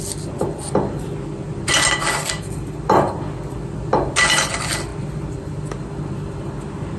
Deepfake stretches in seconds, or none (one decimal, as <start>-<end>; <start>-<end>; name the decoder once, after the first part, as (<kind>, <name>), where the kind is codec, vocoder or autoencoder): none